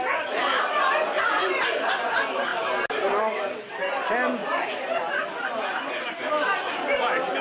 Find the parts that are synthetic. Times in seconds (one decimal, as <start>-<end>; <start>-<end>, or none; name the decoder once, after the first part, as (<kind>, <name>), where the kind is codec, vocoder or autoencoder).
none